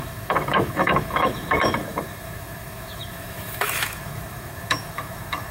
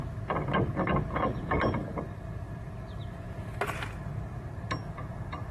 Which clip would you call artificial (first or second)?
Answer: first